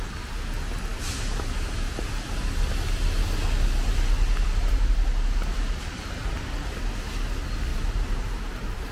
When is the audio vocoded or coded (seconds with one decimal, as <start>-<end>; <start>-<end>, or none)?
7.7-8.9